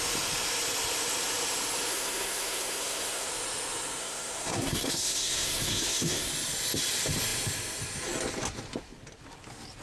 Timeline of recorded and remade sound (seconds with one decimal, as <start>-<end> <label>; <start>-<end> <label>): 0.0-1.9 recorded; 1.9-3.3 remade; 3.3-4.0 recorded; 4.0-6.3 remade; 6.3-9.8 recorded